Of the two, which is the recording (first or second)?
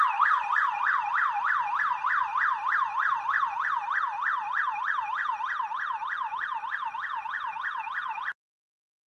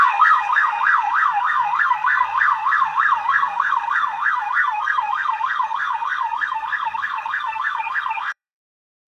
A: first